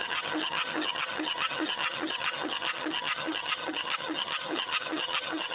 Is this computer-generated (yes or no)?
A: yes